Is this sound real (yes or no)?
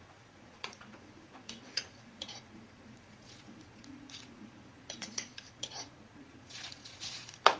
no